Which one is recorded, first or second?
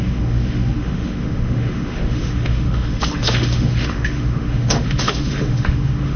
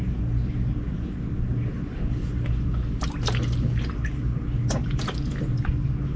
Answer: second